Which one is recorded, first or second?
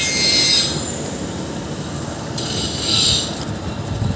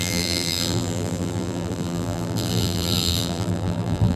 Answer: first